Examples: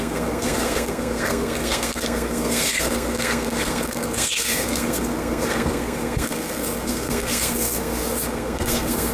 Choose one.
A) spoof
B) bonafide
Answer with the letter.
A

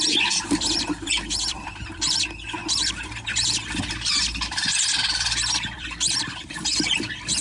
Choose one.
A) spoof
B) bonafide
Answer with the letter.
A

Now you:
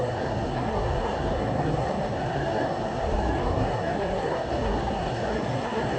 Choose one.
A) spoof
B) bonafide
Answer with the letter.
A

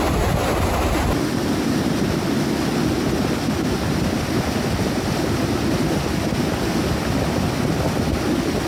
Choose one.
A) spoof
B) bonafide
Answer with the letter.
B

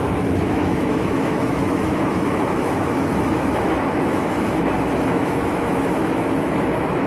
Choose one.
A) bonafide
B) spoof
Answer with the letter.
B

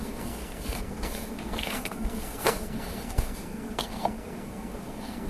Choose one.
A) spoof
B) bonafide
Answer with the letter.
A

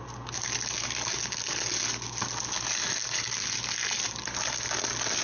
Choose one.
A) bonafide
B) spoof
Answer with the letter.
A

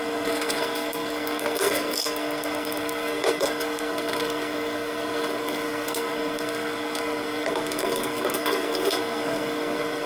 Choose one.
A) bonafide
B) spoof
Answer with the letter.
B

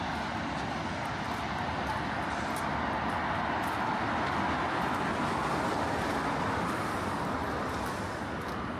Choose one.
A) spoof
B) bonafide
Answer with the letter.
B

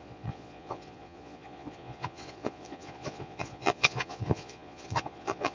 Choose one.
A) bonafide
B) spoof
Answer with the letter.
B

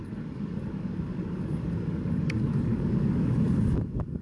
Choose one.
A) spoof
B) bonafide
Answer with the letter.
A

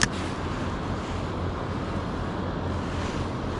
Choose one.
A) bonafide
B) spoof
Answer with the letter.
A